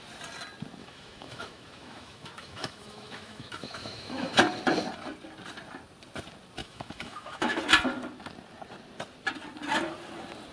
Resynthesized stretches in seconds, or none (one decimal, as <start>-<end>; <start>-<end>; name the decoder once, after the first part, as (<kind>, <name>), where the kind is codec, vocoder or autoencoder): 0.8-4.4 (autoencoder, DAC-VAE); 6.6-7.6